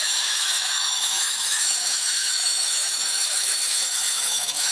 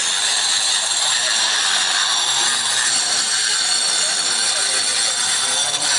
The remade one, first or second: first